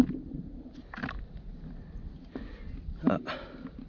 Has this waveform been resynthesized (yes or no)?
no